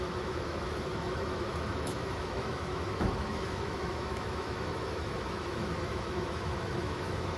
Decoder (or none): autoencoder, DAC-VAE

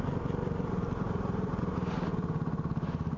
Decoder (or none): none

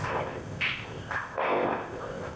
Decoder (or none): codec, ZipCodec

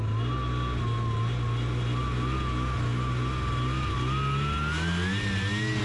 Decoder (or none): none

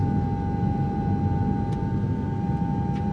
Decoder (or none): none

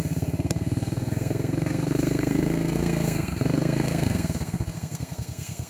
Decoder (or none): codec, SNAC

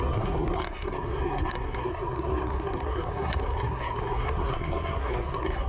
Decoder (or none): codec, SNAC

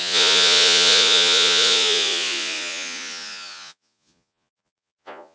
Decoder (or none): vocoder, Vocos